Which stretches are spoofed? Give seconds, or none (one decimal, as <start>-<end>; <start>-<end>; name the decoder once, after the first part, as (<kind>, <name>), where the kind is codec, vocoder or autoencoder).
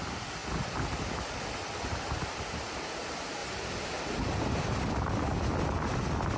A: none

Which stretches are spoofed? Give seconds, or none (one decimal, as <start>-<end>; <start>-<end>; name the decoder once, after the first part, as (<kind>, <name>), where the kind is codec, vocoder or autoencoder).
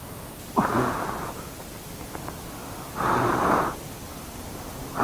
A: none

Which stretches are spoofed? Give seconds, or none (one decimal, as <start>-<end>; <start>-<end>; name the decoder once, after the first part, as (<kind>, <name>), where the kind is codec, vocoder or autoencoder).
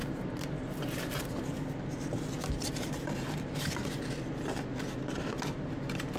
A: none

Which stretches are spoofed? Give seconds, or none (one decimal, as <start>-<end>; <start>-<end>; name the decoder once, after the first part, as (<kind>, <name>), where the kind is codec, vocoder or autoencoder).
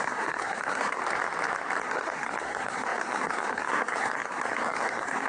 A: 0.0-1.0 (codec, SNAC); 1.8-5.3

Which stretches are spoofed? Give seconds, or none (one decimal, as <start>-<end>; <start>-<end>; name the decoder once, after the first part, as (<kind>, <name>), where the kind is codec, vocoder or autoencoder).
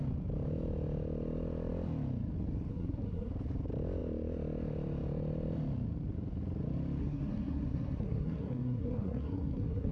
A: 2.7-3.3 (codec, SNAC); 7.0-9.9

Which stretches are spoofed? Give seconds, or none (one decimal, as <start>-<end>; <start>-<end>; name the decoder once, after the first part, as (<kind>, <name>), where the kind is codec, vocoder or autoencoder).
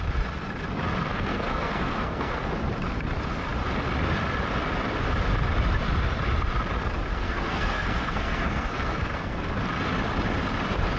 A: 1.1-2.6 (codec, SNAC); 7.1-9.4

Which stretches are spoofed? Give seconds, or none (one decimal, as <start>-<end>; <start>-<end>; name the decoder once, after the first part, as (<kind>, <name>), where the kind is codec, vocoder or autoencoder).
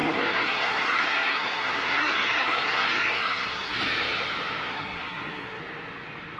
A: 0.0-3.8 (codec, SNAC); 4.7-5.6